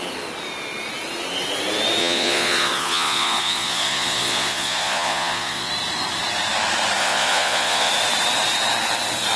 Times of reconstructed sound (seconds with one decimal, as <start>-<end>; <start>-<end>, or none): 2.0-5.7; 7.0-7.9